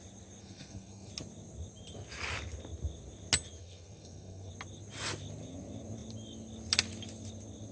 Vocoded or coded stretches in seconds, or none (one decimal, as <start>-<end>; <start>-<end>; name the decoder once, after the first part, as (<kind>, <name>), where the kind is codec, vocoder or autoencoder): 0.4-1.1 (codec, SNAC); 3.6-4.5